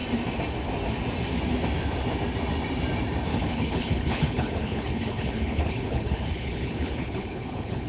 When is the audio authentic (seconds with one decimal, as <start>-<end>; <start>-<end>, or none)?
0.0-3.3

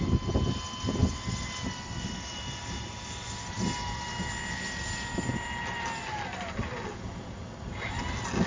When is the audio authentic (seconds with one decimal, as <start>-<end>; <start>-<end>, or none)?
0.0-8.5